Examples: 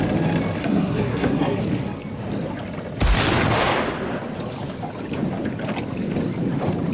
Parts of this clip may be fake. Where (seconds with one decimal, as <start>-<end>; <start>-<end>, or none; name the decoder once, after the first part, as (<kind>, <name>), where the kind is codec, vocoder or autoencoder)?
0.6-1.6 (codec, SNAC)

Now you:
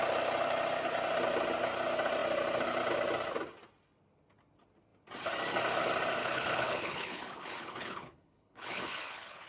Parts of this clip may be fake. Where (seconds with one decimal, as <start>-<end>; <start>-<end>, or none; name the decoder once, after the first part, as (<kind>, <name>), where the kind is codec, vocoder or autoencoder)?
6.2-9.5 (codec, HILCodec)

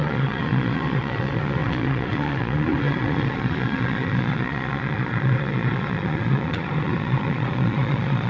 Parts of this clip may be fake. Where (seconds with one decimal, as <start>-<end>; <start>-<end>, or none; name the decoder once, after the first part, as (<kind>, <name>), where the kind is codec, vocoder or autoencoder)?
0.0-8.3 (vocoder, Vocos)